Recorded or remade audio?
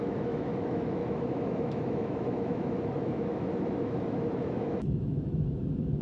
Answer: remade